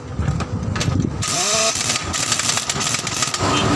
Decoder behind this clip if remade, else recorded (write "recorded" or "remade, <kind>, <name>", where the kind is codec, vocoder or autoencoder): recorded